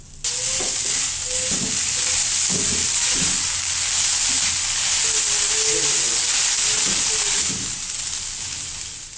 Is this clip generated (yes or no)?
no